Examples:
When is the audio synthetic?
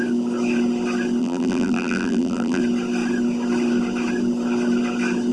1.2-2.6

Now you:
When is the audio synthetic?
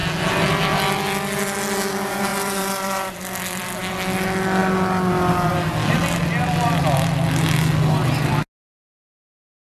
2.3-3.7